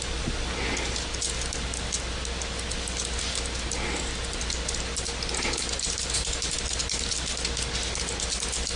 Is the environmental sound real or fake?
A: real